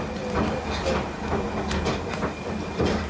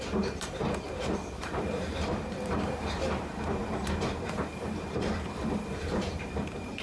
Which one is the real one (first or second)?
first